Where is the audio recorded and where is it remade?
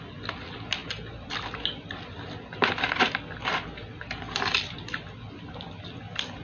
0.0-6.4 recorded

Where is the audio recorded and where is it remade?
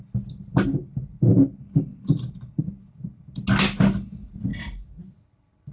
0.0-5.7 recorded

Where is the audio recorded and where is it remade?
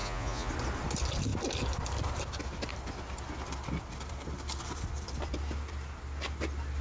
0.0-0.5 remade; 0.5-6.8 recorded